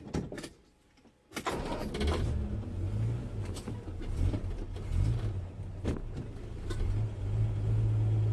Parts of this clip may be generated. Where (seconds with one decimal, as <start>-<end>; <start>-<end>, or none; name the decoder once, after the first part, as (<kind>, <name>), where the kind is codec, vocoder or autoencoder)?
none